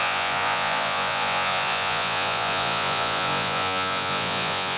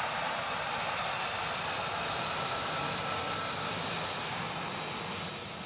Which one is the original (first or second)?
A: second